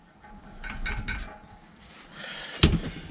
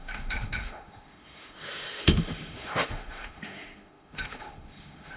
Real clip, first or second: first